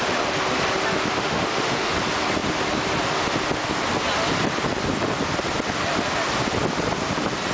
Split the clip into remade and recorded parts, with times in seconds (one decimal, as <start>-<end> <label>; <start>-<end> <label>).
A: 0.0-1.2 recorded; 1.2-1.9 remade; 1.9-7.5 recorded